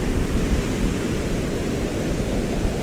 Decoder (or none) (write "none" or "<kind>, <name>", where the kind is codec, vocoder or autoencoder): none